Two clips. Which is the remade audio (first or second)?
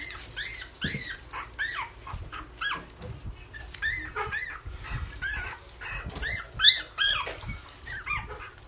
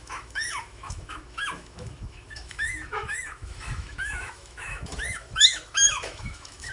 second